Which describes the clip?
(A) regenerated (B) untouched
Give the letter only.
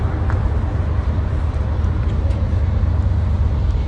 B